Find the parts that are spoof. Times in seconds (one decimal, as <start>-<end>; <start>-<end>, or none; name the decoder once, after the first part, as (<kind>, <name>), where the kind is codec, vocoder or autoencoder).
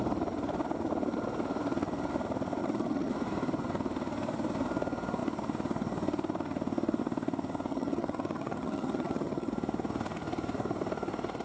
2.6-3.1 (vocoder, HiFi-GAN); 7.7-9.5